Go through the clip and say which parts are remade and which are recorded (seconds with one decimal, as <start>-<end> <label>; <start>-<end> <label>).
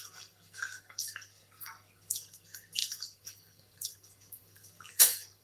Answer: 0.0-5.4 remade